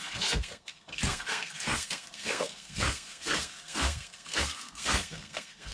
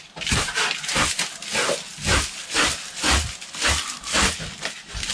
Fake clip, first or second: first